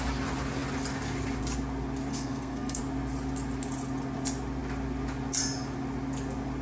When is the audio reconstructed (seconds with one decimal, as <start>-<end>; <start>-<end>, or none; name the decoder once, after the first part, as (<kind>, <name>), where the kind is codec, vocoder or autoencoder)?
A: 2.1-2.8 (codec, SNAC)